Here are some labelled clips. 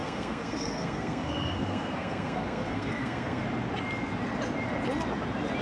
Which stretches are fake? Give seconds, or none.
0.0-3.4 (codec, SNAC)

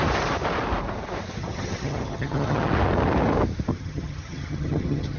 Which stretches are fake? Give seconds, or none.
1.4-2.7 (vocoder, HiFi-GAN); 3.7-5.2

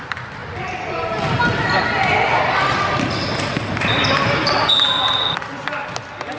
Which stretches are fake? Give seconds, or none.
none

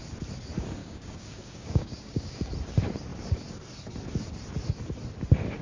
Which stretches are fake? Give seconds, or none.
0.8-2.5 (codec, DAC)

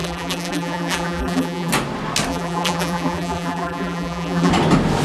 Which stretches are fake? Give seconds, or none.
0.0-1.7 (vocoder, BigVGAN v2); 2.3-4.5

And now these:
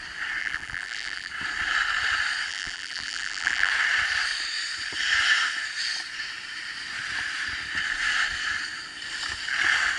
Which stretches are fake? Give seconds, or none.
0.4-1.3 (vocoder, BigVGAN v2); 2.5-3.7